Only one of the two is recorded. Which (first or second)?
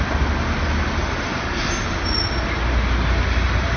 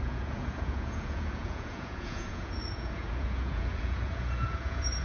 first